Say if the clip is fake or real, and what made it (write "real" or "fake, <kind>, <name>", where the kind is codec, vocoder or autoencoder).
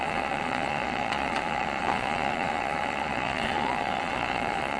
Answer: fake, vocoder, Vocos